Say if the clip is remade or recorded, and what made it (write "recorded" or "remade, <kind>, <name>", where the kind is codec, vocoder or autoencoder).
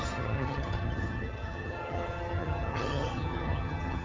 remade, vocoder, HiFi-GAN